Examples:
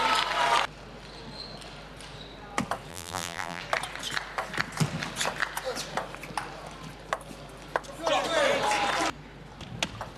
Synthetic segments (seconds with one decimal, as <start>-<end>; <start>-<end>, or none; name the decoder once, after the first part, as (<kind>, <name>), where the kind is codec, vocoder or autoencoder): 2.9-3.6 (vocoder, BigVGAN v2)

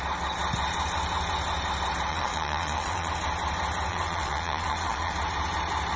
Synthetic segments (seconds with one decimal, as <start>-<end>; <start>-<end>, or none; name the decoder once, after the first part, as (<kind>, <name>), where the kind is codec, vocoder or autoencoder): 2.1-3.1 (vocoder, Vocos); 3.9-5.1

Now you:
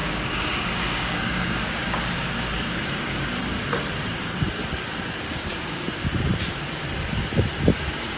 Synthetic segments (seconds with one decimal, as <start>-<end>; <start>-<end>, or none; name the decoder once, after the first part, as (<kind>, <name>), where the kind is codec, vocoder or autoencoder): 0.0-3.4 (codec, DAC); 5.4-6.1

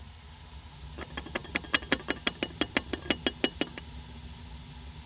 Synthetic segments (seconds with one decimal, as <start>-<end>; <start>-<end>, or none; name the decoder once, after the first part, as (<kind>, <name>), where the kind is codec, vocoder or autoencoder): none

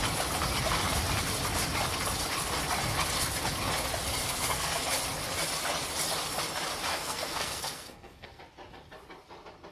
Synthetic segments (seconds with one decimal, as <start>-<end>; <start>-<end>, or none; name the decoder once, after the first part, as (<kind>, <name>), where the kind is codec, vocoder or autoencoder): 4.2-4.8 (codec, SNAC); 6.9-8.4

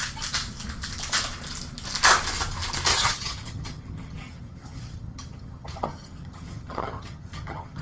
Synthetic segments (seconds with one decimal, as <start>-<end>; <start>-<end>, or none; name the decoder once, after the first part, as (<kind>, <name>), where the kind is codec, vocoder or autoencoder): 2.9-7.8 (vocoder, HiFi-GAN)